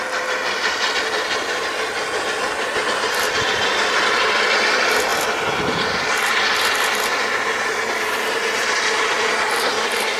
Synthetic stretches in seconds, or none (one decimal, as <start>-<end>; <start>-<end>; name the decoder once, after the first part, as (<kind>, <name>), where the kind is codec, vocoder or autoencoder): none